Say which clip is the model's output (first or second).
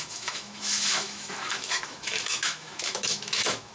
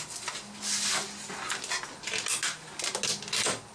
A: first